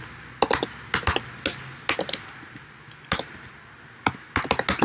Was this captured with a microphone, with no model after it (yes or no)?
yes